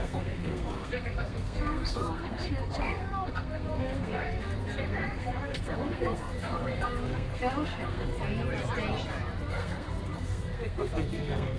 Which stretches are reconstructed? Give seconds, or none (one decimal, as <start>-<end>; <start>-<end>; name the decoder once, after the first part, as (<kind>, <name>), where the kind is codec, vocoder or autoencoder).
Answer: 0.0-8.1 (codec, SNAC); 9.5-11.6